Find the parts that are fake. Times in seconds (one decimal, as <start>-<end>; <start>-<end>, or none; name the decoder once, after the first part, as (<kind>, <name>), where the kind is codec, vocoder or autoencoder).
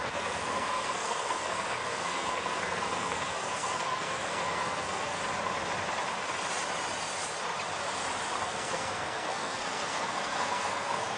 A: 0.0-5.2 (codec, SNAC); 8.4-11.2